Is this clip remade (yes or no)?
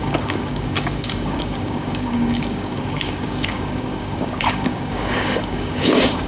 yes